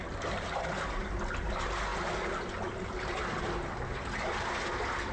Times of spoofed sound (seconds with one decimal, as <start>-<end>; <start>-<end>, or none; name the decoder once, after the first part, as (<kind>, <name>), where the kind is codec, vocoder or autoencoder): none